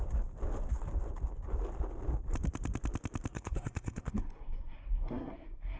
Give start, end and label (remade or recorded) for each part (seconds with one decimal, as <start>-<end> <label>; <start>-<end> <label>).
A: 0.0-3.3 recorded; 3.3-5.8 remade